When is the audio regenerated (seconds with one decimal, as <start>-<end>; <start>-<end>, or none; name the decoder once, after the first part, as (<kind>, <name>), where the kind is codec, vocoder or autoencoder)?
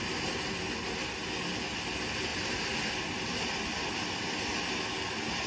none